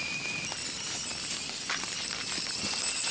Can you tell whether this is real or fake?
real